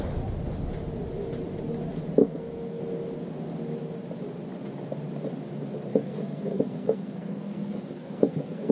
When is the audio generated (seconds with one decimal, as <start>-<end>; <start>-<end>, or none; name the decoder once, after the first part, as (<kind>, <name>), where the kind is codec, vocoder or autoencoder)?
2.2-2.8 (codec, SNAC); 5.9-8.7